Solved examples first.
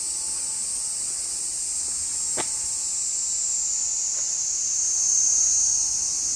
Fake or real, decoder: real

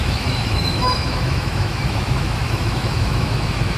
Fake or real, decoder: fake, autoencoder, DAC-VAE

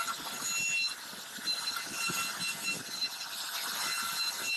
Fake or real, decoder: real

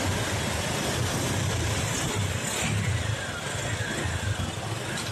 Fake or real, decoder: real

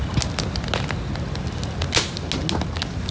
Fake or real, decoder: real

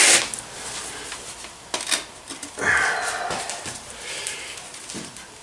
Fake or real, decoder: real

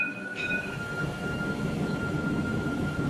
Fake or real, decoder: fake, autoencoder, DAC-VAE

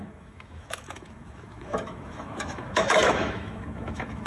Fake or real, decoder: fake, autoencoder, DAC-VAE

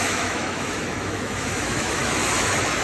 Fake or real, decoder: fake, autoencoder, DAC-VAE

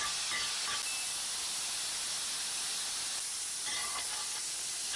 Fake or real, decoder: real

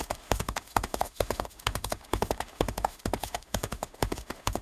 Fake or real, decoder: fake, autoencoder, DAC-VAE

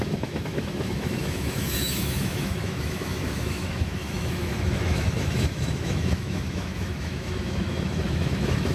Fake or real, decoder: fake, autoencoder, DAC-VAE